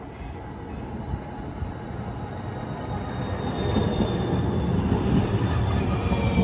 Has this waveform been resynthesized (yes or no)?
no